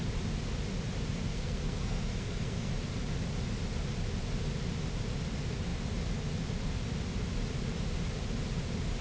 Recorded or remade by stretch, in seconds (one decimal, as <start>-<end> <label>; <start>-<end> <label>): 0.0-1.3 recorded; 1.3-2.7 remade; 2.7-9.0 recorded